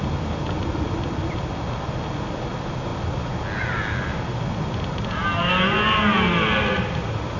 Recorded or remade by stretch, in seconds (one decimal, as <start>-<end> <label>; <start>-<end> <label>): 0.0-7.4 recorded